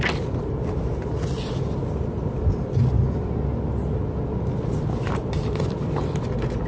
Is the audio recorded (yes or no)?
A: yes